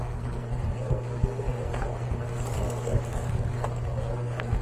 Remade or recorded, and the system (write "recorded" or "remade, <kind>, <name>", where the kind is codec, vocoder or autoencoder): remade, codec, SNAC